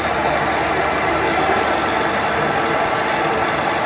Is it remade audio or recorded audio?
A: recorded